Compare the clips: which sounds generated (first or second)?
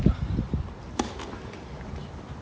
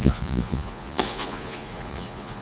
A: second